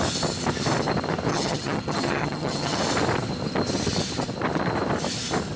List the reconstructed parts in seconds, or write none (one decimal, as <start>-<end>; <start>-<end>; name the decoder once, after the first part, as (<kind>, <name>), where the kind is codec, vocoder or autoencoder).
1.3-2.8 (vocoder, HiFi-GAN)